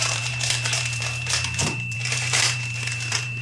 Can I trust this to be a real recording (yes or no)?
no